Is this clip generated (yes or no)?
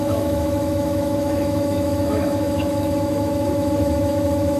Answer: yes